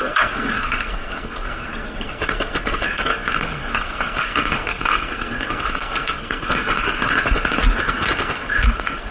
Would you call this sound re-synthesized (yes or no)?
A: yes